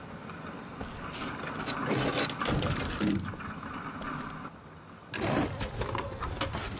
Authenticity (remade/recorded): recorded